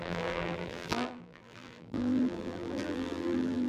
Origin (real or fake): fake